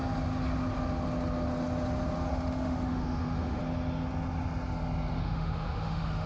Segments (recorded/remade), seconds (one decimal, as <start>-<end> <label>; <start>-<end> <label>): 0.0-2.3 recorded; 2.3-3.6 remade; 3.6-5.2 recorded; 5.2-6.3 remade